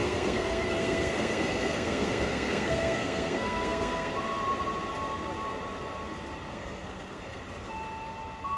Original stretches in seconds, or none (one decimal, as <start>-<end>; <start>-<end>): 4.1-6.5; 7.4-8.6